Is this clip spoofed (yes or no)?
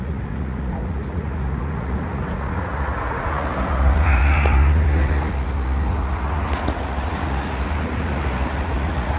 yes